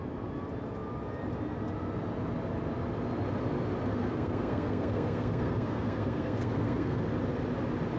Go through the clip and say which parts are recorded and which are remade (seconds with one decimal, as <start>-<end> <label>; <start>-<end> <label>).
0.0-3.9 recorded; 3.9-7.0 remade; 7.0-8.0 recorded